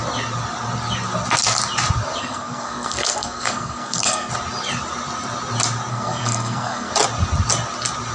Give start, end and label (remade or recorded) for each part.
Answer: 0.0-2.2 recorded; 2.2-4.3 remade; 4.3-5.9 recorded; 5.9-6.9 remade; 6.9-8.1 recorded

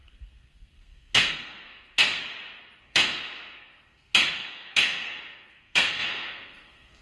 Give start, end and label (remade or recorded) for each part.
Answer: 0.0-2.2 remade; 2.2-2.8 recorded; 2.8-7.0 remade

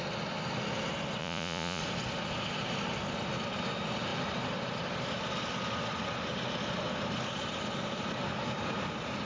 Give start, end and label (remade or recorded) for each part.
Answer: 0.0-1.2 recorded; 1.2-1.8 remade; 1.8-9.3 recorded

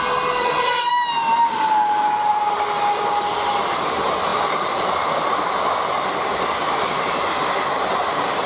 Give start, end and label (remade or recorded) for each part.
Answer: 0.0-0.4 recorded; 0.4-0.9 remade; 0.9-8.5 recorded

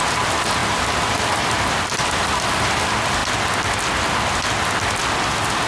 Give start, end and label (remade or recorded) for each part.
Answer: 0.0-5.7 recorded

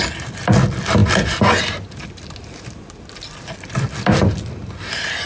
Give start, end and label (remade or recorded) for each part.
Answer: 0.0-5.3 recorded

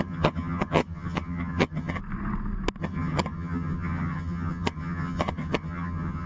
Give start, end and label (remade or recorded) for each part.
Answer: 0.0-2.0 remade; 2.0-2.8 recorded; 2.8-6.3 remade

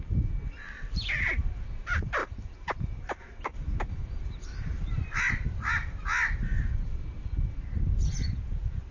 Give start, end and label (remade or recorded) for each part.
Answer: 0.0-4.5 remade; 4.5-7.4 recorded; 7.4-8.9 remade